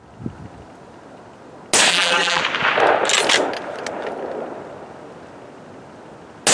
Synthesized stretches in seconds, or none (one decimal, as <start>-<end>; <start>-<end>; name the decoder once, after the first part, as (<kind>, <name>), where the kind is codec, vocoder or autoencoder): 1.9-2.4 (vocoder, BigVGAN v2)